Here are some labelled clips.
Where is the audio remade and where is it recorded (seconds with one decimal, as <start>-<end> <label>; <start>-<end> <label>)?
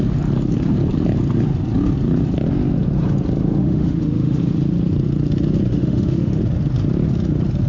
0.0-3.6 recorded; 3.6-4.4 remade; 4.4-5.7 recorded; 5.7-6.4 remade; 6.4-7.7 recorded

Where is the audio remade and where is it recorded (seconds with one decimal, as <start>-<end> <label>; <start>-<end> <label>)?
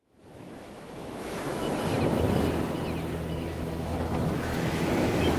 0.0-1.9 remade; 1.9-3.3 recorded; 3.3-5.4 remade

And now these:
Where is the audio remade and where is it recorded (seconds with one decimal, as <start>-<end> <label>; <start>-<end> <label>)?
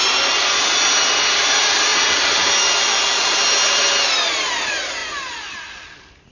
0.0-6.3 recorded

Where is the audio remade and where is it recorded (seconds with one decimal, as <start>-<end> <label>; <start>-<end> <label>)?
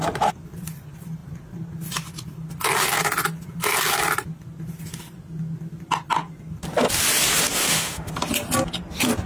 0.0-7.6 recorded; 7.6-8.1 remade; 8.1-9.3 recorded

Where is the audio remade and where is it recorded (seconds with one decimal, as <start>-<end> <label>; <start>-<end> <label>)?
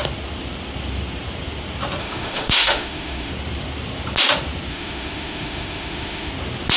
0.0-2.0 recorded; 2.0-3.3 remade; 3.3-4.7 recorded; 4.7-6.3 remade; 6.3-6.8 recorded